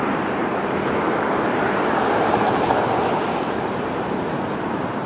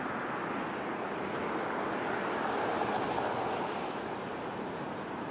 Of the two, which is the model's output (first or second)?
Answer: first